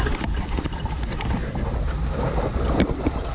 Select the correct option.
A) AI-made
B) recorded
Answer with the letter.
B